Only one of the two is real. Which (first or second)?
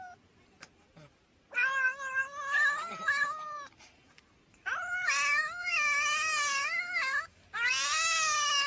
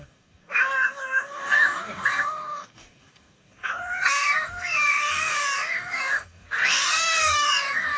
first